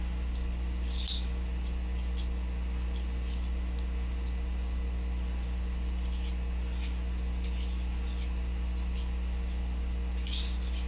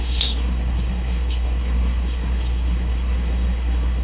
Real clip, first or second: first